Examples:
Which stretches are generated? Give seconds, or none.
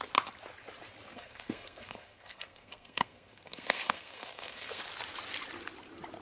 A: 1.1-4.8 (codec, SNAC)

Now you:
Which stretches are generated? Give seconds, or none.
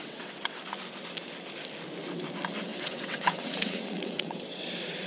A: 0.0-0.6 (vocoder, WaveNeXt); 2.7-4.6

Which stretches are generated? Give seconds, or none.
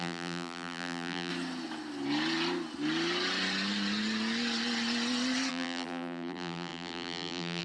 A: 0.0-1.3 (vocoder, BigVGAN v2); 5.5-7.6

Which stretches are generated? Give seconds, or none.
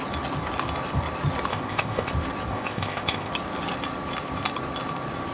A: 1.5-2.1 (codec, ZipCodec); 2.5-3.3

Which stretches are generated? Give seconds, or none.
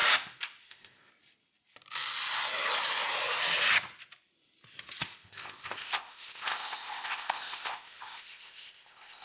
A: 0.6-1.1 (codec, ZipCodec); 5.0-9.2